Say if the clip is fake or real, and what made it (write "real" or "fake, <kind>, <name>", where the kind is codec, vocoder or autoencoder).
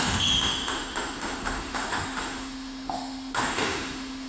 fake, autoencoder, DAC-VAE